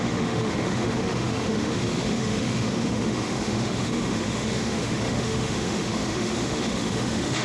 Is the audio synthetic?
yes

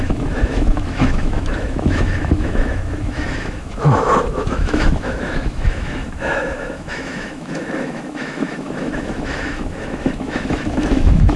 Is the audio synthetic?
yes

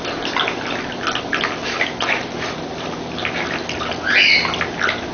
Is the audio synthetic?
no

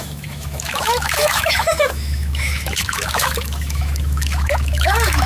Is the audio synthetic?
yes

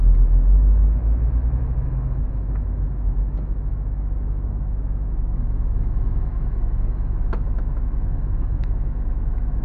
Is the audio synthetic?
yes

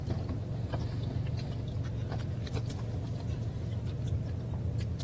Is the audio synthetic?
no